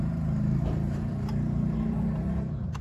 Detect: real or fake fake